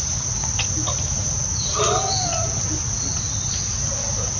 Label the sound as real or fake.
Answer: real